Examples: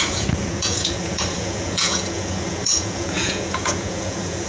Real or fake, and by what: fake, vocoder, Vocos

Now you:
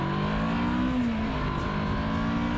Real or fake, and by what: real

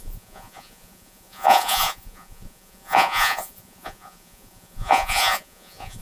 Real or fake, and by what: fake, vocoder, Vocos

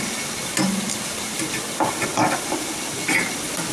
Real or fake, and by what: real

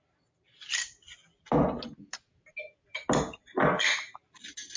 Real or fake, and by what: real